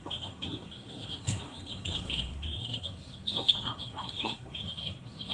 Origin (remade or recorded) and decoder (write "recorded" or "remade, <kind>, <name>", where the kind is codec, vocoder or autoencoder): remade, codec, SNAC